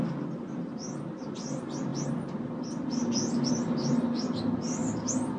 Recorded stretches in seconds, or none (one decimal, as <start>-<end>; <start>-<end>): 0.0-5.4